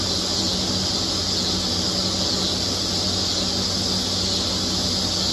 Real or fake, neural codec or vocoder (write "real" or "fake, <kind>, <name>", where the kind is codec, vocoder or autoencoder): real